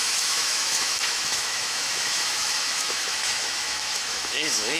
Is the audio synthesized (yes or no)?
yes